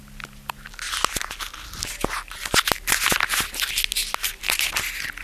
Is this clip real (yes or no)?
yes